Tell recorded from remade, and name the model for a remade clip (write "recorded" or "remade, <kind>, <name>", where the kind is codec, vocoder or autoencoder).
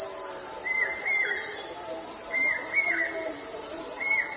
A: recorded